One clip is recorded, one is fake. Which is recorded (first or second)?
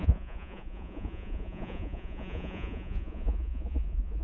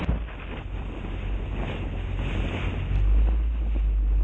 second